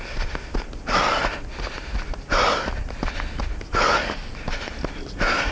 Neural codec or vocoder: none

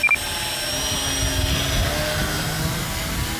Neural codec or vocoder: none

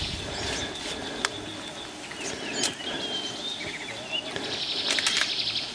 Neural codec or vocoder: none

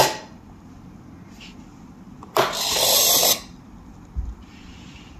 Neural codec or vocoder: none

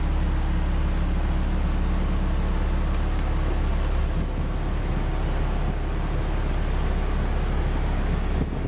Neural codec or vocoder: none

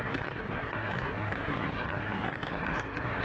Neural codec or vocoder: codec, SNAC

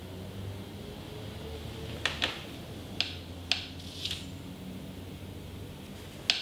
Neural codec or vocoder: none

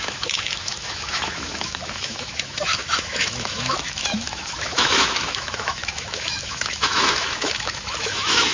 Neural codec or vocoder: autoencoder, DAC-VAE